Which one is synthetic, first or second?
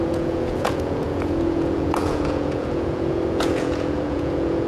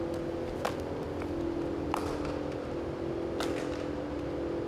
first